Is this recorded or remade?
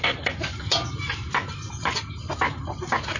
recorded